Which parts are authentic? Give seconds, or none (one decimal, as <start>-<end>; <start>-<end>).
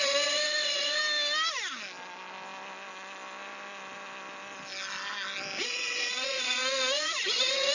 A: 1.0-5.6